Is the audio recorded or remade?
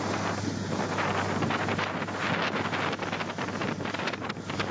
recorded